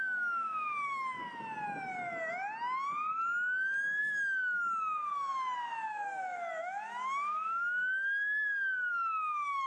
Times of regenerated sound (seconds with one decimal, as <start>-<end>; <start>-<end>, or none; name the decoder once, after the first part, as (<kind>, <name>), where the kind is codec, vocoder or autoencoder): 0.0-1.2 (autoencoder, DAC-VAE); 4.0-7.8; 8.9-9.7